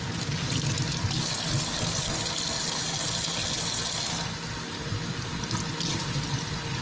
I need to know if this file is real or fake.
real